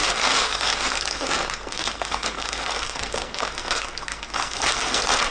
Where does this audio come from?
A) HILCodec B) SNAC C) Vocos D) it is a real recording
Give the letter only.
B